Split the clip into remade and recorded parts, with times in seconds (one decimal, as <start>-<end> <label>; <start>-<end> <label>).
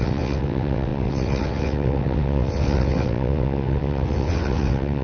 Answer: 0.0-5.0 remade